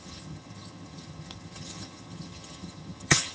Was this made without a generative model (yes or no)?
no